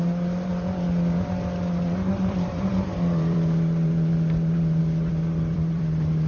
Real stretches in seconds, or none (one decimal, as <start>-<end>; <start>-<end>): 0.5-2.2